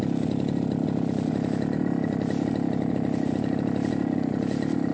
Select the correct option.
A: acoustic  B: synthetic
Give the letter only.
A